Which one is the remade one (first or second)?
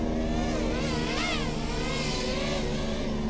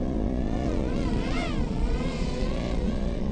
second